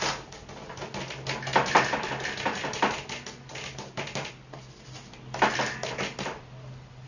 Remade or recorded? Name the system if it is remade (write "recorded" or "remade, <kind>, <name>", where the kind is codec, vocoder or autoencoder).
recorded